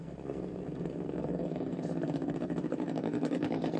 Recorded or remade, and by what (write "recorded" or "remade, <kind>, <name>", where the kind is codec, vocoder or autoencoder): remade, codec, SNAC